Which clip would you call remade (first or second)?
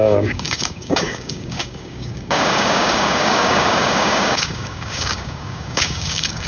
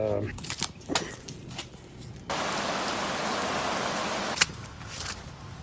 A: first